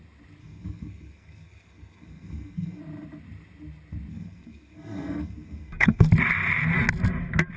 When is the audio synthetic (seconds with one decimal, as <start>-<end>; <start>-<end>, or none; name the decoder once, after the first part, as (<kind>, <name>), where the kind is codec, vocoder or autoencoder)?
0.4-2.8 (codec, SNAC); 4.1-6.1